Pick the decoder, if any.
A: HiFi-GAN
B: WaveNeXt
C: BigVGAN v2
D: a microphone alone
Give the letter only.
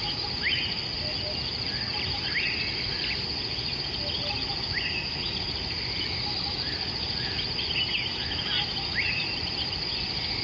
D